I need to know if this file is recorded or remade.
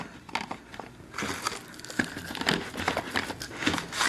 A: recorded